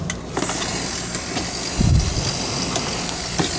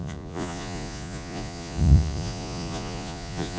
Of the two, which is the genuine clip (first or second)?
first